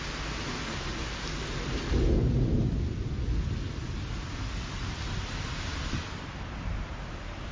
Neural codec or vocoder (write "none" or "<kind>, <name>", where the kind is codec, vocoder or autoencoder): none